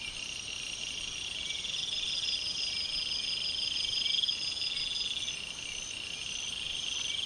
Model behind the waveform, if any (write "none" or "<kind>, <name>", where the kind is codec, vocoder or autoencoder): none